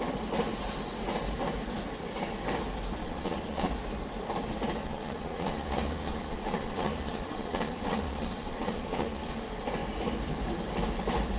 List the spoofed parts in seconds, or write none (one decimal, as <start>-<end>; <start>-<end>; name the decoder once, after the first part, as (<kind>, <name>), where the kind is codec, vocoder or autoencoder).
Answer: 3.0-3.7 (vocoder, Vocos); 4.8-9.3